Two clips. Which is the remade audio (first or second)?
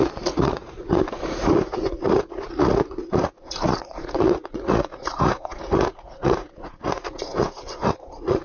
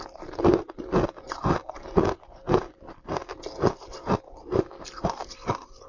first